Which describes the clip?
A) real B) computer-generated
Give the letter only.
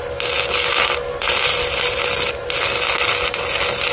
A